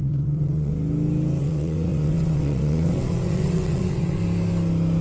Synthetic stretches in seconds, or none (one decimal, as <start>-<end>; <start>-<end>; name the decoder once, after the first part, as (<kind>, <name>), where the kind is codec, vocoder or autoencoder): 0.0-0.7 (vocoder, WaveNeXt); 1.4-4.2